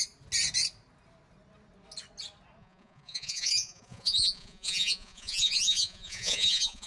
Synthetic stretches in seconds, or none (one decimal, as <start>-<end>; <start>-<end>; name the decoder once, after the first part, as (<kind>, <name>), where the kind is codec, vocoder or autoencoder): 2.6-6.9 (vocoder, Vocos)